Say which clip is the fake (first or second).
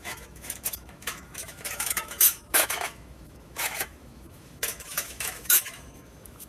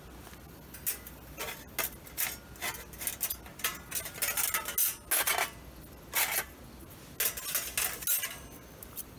first